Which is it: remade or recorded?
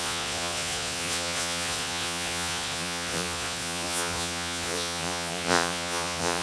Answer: remade